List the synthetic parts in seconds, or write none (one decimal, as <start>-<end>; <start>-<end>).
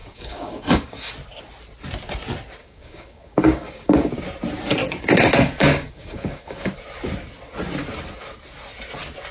0.0-1.1; 2.6-4.1; 4.8-6.7